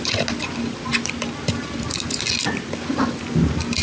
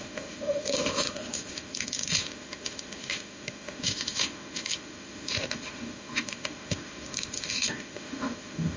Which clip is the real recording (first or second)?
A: first